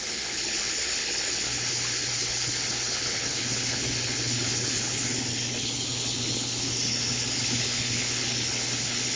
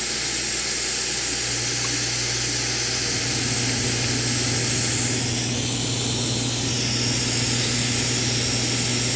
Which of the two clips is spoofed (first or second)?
first